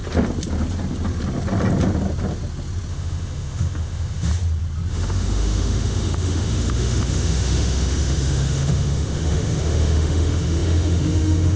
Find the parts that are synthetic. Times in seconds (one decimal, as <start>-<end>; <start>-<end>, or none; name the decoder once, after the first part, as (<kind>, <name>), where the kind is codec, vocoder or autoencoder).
2.9-4.3 (autoencoder, DAC-VAE); 4.9-11.6

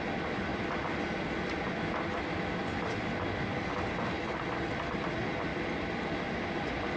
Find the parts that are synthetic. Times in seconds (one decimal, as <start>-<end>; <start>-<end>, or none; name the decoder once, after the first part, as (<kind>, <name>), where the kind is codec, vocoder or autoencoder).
none

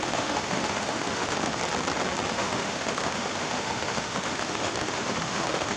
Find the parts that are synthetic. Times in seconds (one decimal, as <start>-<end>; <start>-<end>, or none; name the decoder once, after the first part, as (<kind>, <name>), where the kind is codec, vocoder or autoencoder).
0.0-1.6 (autoencoder, DAC-VAE); 2.3-5.8